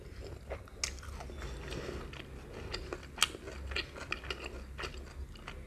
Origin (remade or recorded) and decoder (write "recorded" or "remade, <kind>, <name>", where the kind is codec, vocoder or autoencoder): recorded